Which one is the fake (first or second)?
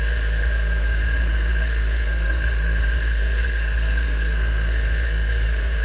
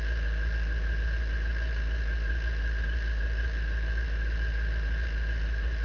first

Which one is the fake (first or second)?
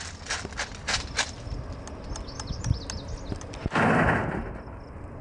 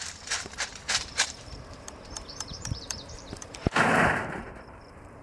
second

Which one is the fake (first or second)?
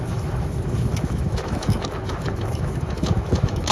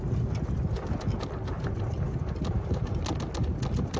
first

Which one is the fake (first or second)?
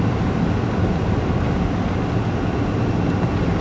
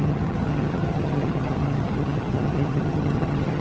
second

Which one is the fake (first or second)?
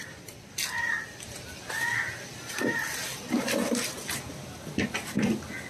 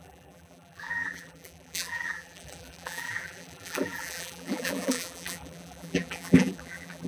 second